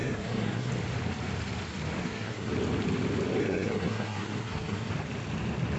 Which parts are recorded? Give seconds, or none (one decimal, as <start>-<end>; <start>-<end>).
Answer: 0.7-2.0; 2.5-3.4; 4.9-5.8

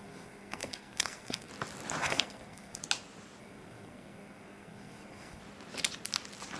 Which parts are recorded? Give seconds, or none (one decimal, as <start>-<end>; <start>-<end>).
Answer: 1.5-2.0; 2.8-3.4; 5.4-6.6

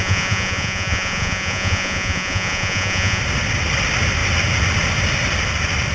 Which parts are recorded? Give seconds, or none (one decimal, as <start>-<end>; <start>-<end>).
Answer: 3.2-5.9

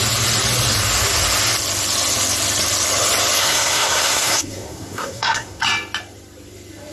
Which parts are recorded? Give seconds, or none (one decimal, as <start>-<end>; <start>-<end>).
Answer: 0.0-3.4; 5.6-6.9

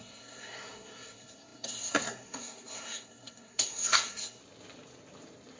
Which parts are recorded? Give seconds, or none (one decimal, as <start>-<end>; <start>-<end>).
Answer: 4.4-5.6

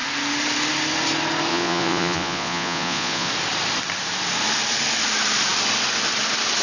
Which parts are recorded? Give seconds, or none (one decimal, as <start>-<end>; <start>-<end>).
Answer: 0.0-1.5; 3.3-6.6

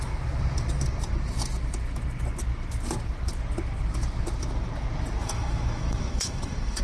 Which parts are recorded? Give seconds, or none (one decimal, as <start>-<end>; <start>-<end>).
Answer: 0.0-5.2